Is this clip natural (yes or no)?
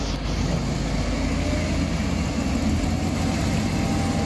yes